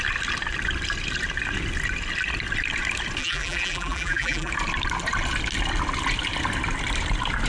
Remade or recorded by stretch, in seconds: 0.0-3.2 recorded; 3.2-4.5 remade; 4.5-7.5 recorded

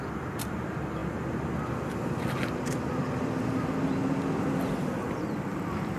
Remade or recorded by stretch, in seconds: 0.0-6.0 recorded

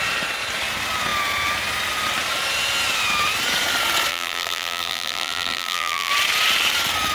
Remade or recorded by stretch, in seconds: 0.0-4.1 recorded; 4.1-6.1 remade; 6.1-7.1 recorded